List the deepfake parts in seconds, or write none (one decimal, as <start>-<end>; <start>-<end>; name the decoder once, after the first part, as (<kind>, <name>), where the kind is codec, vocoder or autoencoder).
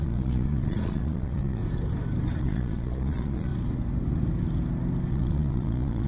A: 0.0-1.6 (vocoder, Vocos); 2.4-3.5; 5.1-6.1